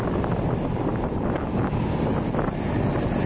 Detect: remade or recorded recorded